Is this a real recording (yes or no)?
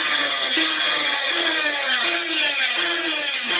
no